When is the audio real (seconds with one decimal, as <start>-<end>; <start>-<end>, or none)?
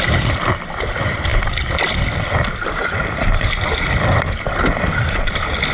0.0-5.7